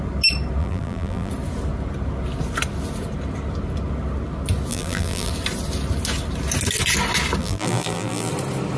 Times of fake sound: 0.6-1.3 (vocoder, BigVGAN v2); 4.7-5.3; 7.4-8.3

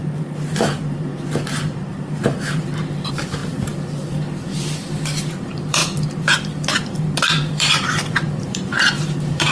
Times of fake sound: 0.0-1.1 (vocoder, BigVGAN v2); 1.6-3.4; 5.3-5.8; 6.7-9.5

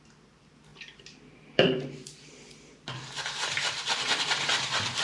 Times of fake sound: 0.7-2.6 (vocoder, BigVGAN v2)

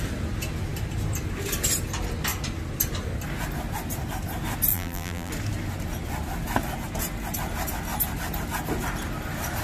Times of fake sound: 4.7-5.3 (vocoder, BigVGAN v2)